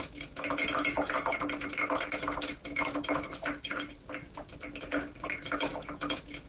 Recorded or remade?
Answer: remade